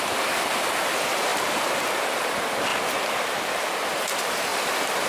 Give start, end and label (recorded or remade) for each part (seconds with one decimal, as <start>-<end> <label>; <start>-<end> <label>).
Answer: 0.0-1.3 recorded; 1.3-2.3 remade; 2.3-2.7 recorded; 2.7-3.6 remade; 3.6-4.5 recorded; 4.5-5.1 remade